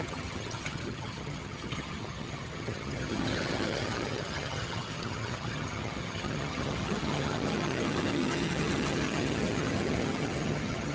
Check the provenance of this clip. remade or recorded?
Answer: remade